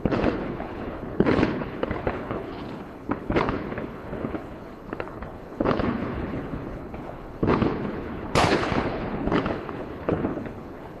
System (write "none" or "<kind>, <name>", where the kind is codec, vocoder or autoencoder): codec, HILCodec